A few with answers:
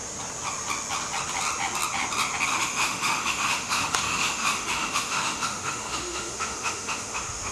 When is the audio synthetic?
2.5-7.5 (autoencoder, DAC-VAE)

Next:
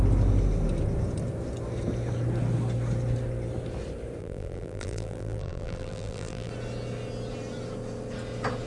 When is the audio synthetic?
4.2-6.5 (vocoder, BigVGAN v2)

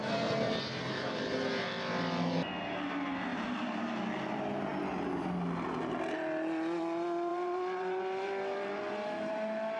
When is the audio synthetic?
0.0-1.2 (vocoder, BigVGAN v2); 3.3-3.9; 7.3-9.8

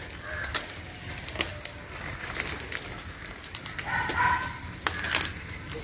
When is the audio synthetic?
none

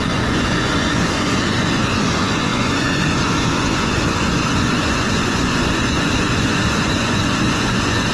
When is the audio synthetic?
0.0-8.1 (vocoder, Vocos)

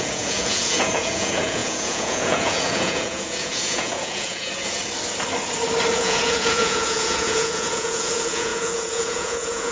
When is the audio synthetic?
0.0-4.8 (vocoder, Vocos); 5.9-9.7

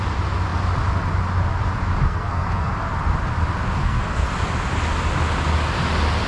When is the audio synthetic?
2.0-2.7 (codec, SNAC); 3.8-4.3